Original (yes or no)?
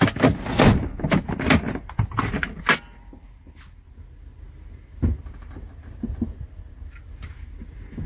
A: yes